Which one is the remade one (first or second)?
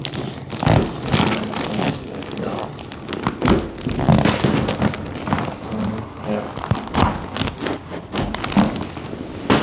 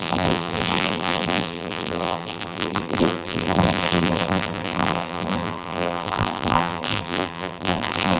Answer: second